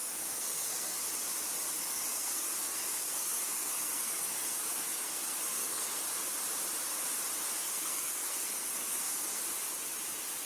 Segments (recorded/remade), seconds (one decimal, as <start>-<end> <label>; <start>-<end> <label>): 0.0-1.0 remade; 1.0-1.8 recorded; 1.8-6.0 remade; 6.0-7.6 recorded; 7.6-9.4 remade; 9.4-10.5 recorded